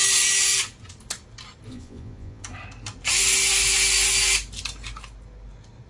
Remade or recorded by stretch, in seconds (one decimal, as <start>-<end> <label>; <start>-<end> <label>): 0.0-1.7 recorded; 1.7-2.4 remade; 2.4-5.9 recorded